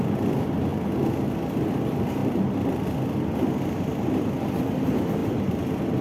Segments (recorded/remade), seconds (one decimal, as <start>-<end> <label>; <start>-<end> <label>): 0.0-2.2 recorded; 2.2-4.7 remade; 4.7-5.2 recorded; 5.2-6.0 remade